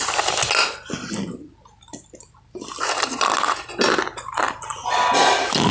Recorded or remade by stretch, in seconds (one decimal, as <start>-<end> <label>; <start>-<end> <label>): 0.0-5.7 recorded